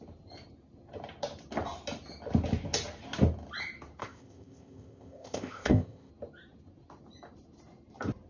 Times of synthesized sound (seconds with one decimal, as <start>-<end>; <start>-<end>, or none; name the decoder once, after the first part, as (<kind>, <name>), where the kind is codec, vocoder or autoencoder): 4.0-6.1 (codec, ZipCodec)